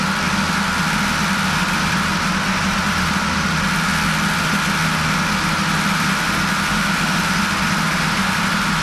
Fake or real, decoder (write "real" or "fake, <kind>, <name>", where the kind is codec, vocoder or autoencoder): real